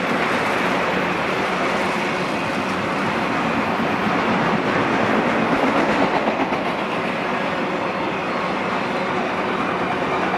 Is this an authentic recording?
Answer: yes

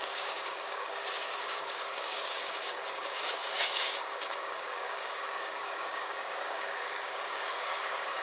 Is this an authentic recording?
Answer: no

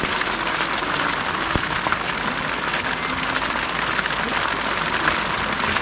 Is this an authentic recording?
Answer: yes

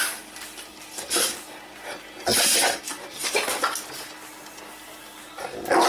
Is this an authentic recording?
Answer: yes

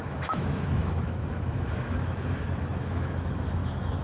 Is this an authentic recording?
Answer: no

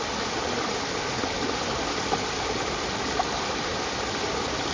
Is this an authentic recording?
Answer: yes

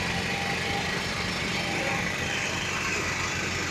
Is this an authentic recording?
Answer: yes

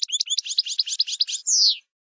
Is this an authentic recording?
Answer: yes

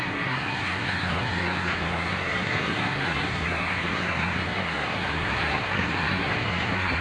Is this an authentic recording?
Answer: no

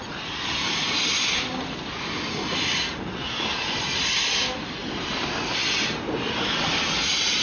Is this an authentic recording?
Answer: yes